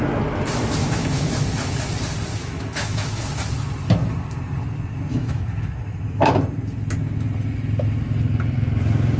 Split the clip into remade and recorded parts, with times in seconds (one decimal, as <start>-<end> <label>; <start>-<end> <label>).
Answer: 0.0-0.8 recorded; 0.8-1.3 remade; 1.3-2.4 recorded; 2.4-3.2 remade; 3.2-5.1 recorded; 5.1-6.3 remade; 6.3-9.2 recorded